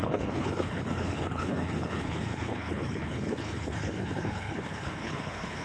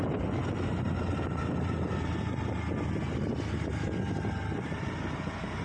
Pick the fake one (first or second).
first